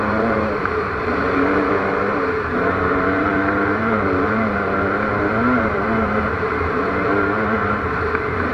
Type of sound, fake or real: fake